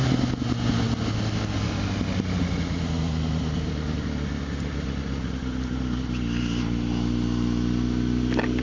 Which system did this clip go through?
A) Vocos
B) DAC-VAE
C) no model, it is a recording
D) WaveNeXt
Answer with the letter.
C